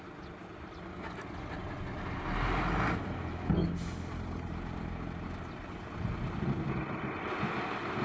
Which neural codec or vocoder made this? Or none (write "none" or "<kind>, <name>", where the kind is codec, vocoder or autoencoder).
none